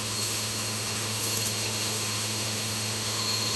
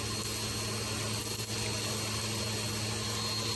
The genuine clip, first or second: second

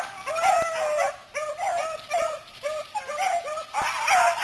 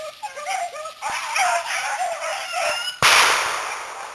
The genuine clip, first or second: first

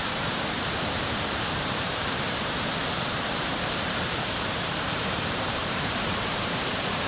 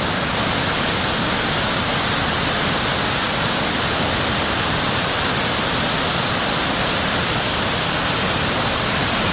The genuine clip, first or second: second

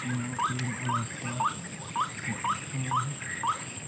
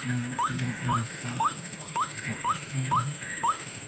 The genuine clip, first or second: first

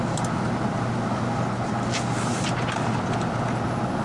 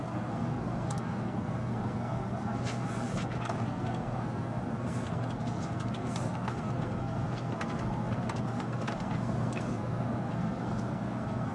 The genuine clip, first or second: first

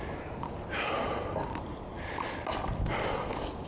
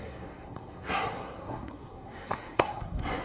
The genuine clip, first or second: first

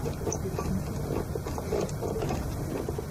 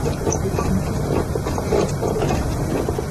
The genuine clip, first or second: first